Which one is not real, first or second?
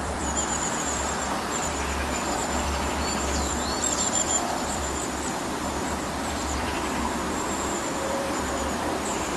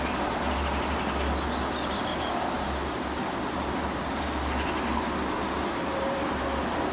first